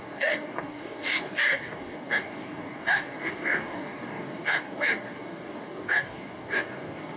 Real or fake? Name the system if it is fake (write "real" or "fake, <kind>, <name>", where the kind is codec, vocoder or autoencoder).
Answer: fake, codec, DAC